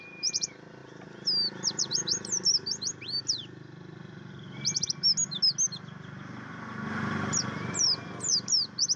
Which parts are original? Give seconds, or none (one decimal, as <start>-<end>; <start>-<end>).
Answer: 0.0-9.0